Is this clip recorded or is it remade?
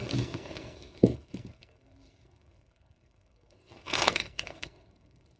remade